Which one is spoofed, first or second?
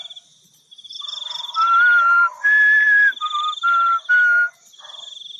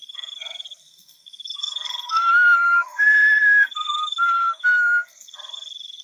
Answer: second